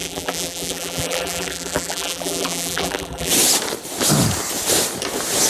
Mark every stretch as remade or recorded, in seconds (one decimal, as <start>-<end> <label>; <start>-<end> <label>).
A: 0.0-3.3 remade; 3.3-5.5 recorded